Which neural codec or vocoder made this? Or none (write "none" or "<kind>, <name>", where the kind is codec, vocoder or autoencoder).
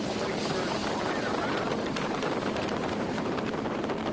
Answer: vocoder, BigVGAN v2